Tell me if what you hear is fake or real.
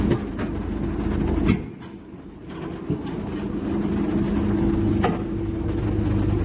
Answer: real